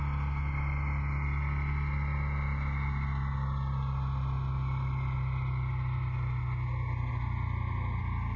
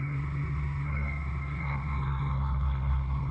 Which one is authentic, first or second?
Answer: first